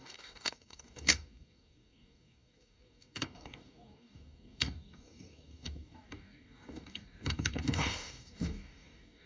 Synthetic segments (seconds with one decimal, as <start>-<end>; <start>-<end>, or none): 0.0-9.3